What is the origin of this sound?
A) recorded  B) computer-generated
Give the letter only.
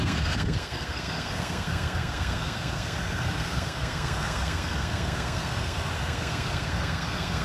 B